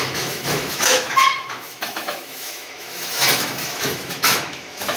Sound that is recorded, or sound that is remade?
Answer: remade